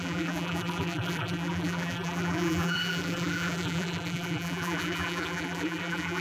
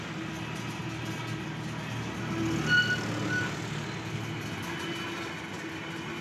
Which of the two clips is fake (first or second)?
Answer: first